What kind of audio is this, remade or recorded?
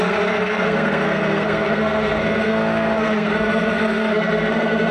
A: remade